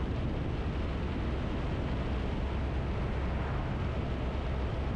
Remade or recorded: recorded